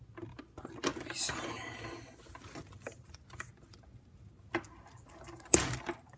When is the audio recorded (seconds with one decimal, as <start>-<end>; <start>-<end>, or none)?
0.0-6.2